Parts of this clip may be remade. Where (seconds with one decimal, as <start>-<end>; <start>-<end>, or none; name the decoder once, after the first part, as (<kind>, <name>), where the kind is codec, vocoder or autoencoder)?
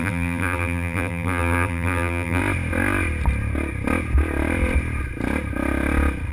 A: 0.0-2.4 (vocoder, BigVGAN v2)